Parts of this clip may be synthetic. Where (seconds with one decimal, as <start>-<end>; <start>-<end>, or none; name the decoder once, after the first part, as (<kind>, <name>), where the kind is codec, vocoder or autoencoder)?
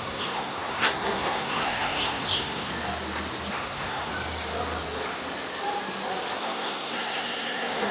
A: 0.0-2.7 (codec, SNAC); 3.5-4.1; 6.4-7.9